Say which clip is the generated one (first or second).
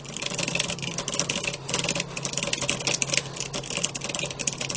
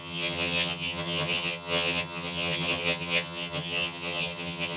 second